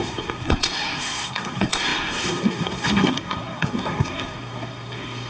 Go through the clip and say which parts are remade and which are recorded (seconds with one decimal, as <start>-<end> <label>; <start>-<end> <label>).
0.0-5.3 remade